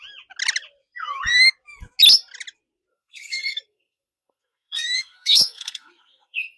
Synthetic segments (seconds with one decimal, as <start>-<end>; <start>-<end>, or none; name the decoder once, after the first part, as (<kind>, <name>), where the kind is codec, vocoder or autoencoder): 2.9-6.6 (codec, SNAC)